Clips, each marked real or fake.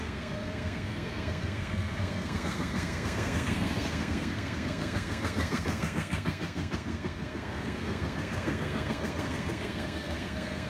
fake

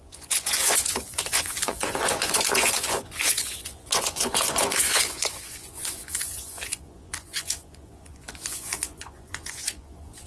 fake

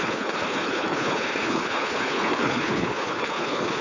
fake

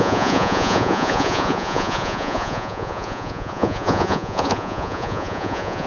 fake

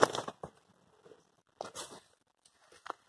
real